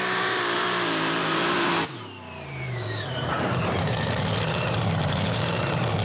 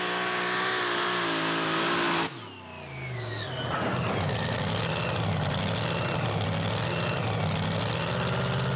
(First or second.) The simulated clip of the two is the first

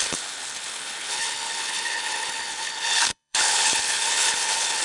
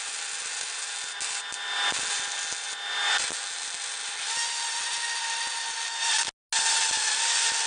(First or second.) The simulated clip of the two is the first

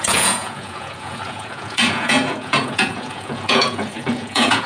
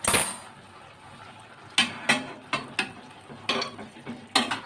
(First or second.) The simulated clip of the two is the first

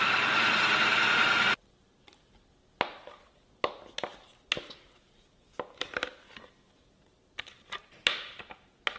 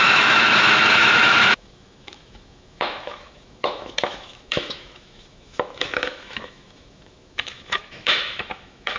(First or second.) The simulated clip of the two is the second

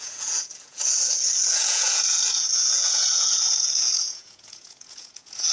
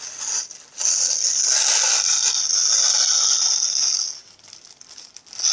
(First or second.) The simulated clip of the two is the first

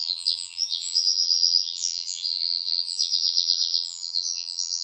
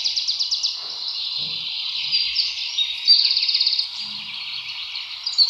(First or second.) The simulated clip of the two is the first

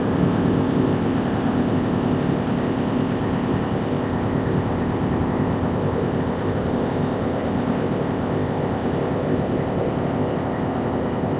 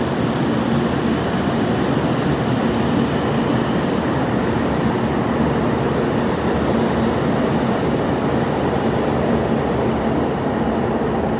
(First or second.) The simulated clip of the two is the first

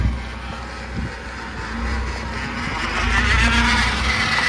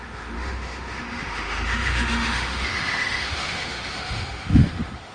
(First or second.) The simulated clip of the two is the second